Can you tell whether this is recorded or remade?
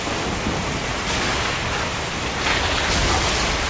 recorded